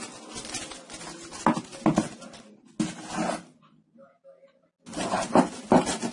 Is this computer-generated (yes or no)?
no